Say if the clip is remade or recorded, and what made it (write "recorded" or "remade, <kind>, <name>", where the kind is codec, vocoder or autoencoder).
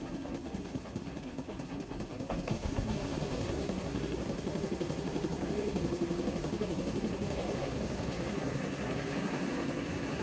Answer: remade, codec, SNAC